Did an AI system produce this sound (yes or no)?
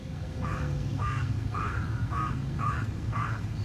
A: yes